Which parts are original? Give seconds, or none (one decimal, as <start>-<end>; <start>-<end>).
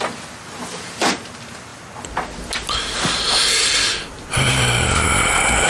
0.0-5.7